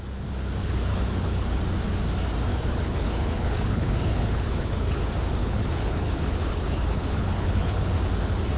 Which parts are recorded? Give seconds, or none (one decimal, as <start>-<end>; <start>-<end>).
0.0-0.6; 1.6-2.5; 5.0-5.4; 7.9-8.6